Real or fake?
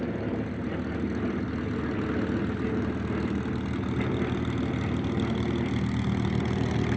real